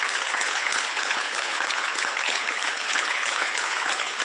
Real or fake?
fake